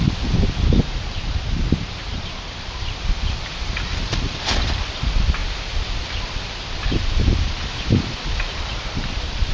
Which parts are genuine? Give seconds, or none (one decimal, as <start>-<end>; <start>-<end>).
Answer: 5.4-6.0